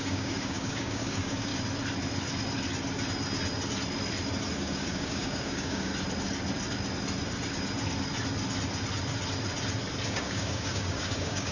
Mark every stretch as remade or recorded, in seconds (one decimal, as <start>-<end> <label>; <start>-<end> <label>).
0.0-1.5 remade; 1.5-4.5 recorded; 4.5-5.9 remade; 5.9-10.1 recorded; 10.1-11.5 remade